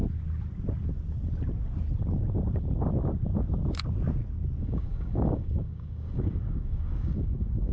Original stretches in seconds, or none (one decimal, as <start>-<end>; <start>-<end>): 0.0-4.6